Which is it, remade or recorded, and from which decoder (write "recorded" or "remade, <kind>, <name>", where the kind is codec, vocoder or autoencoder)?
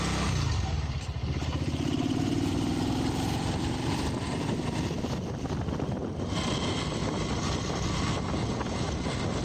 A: recorded